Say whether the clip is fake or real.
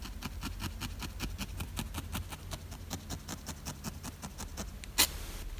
real